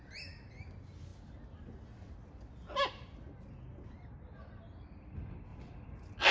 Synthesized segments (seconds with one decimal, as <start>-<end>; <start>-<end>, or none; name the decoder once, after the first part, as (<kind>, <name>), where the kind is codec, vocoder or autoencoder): none